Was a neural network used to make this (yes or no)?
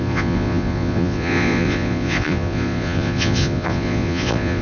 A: yes